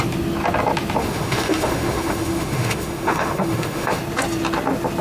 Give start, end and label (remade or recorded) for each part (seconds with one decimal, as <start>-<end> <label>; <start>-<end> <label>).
0.0-1.0 recorded; 1.0-4.0 remade; 4.0-5.0 recorded